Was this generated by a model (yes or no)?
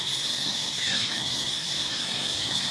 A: yes